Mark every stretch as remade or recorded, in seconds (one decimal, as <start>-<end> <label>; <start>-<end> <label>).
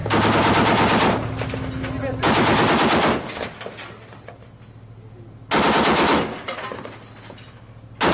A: 0.0-8.1 recorded